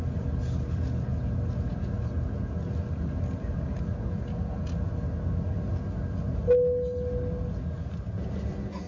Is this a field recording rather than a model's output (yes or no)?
yes